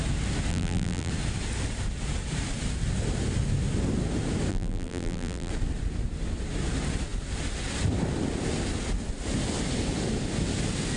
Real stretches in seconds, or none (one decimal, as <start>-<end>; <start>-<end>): 0.0-0.5; 1.1-4.5; 5.5-11.0